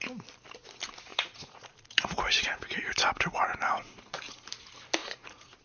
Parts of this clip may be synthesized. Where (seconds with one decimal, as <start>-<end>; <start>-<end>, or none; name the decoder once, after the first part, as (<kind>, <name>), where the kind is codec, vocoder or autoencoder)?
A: 1.1-4.5 (vocoder, Vocos); 5.0-5.6